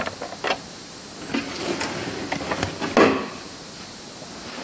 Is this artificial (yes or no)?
no